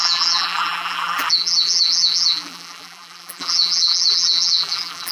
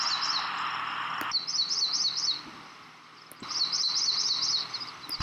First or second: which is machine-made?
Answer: first